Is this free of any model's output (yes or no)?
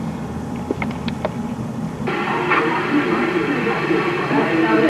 no